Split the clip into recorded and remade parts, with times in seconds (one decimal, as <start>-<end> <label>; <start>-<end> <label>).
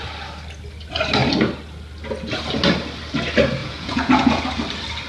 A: 0.0-3.6 recorded; 3.6-4.4 remade; 4.4-5.1 recorded